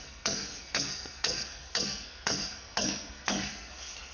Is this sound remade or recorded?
remade